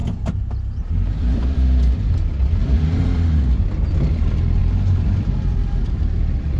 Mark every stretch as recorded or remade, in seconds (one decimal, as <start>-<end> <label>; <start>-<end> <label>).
0.0-1.2 recorded; 1.2-6.6 remade